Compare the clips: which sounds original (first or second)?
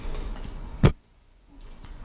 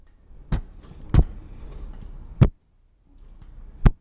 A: second